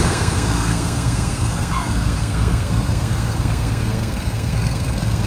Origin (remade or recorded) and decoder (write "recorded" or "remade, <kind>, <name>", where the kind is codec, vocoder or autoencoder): remade, codec, SNAC